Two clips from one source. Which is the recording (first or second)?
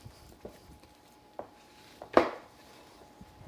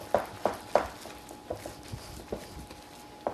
second